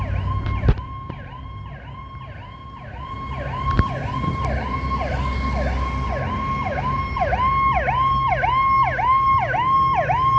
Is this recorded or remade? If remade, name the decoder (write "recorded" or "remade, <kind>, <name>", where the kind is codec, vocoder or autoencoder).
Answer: recorded